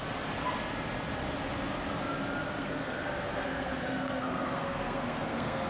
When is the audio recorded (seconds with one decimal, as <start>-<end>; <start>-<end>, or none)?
0.0-2.6